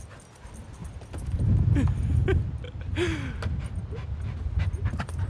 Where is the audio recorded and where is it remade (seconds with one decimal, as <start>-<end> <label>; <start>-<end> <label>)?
0.0-5.3 recorded